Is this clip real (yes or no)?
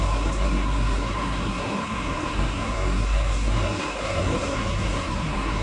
no